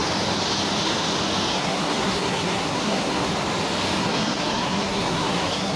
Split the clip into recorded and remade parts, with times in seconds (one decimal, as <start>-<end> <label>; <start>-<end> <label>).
0.0-1.5 recorded; 1.5-3.3 remade; 3.3-4.0 recorded; 4.0-5.8 remade